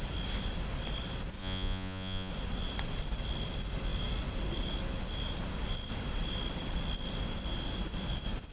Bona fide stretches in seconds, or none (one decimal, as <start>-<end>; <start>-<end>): 0.0-1.4; 2.3-8.5